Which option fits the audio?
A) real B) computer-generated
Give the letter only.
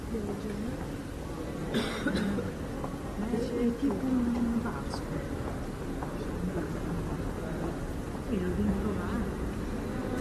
A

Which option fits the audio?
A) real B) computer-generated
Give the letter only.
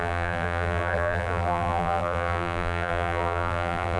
B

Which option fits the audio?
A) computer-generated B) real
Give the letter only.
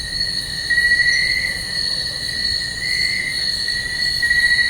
B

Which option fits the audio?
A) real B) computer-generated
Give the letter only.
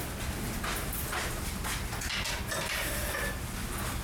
A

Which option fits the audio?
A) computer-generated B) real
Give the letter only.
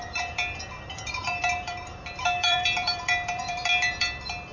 A